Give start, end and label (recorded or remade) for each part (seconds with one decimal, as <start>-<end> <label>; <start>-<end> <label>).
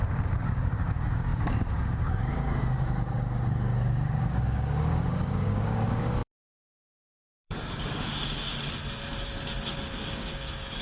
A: 0.0-8.5 remade; 8.5-10.0 recorded; 10.0-10.8 remade